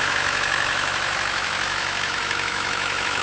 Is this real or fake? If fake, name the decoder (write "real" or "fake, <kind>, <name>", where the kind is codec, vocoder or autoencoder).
fake, autoencoder, DAC-VAE